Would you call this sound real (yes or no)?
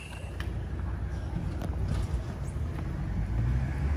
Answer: yes